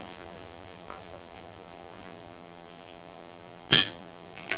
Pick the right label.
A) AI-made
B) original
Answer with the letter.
A